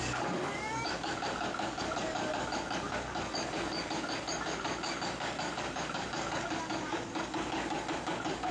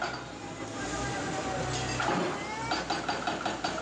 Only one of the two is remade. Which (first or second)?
first